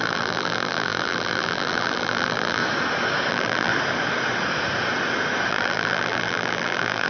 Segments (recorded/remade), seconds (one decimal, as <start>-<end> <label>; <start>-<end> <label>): 0.0-2.6 remade; 2.6-3.3 recorded; 3.3-3.7 remade; 3.7-5.5 recorded; 5.5-7.1 remade